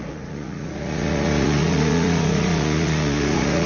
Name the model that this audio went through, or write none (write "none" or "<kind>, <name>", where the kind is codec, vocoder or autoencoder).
vocoder, Vocos